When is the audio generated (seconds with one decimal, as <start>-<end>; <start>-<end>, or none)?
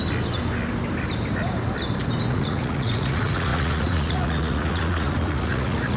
2.3-6.0